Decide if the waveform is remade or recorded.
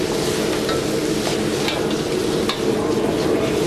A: recorded